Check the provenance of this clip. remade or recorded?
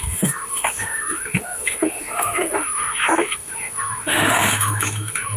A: remade